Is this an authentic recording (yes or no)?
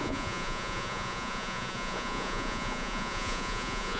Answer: no